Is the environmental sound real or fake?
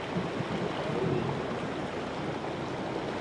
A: real